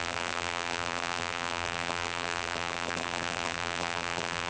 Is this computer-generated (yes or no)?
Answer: yes